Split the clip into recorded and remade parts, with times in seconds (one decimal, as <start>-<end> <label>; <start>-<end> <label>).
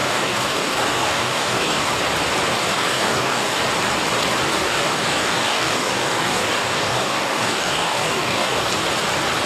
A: 0.0-1.9 remade; 1.9-2.7 recorded; 2.7-3.6 remade; 3.6-4.5 recorded; 4.5-8.7 remade; 8.7-9.5 recorded